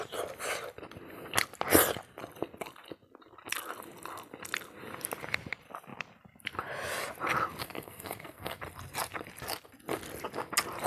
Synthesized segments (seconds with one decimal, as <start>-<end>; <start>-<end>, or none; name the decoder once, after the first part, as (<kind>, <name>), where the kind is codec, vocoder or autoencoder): 7.6-8.6 (codec, SNAC)